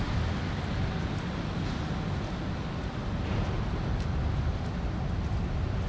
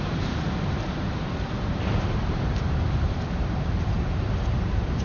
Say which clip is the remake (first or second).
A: second